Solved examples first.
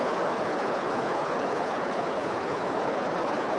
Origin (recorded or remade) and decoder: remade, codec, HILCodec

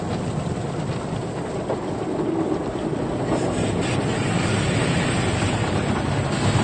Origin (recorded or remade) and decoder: recorded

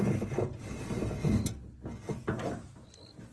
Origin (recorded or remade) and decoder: recorded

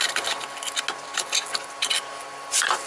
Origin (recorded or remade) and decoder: recorded